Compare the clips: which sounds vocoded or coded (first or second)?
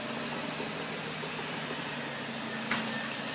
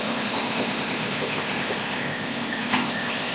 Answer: second